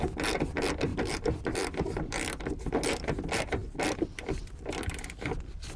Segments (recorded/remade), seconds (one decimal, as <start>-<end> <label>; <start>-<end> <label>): 0.0-0.9 recorded; 0.9-2.7 remade; 2.7-3.6 recorded; 3.6-5.2 remade; 5.2-5.8 recorded